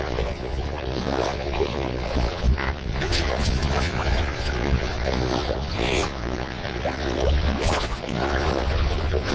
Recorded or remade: remade